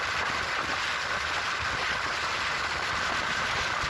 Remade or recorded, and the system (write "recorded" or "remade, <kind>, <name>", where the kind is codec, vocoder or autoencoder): recorded